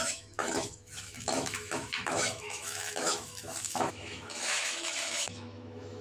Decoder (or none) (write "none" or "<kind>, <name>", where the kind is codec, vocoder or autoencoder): autoencoder, DAC-VAE